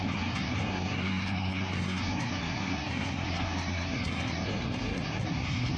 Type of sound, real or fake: fake